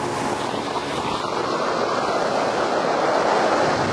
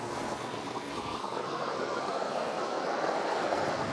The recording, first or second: first